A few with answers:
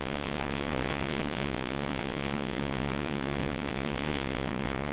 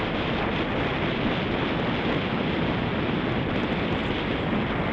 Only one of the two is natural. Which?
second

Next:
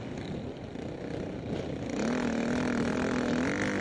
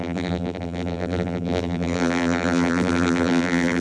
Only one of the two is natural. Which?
first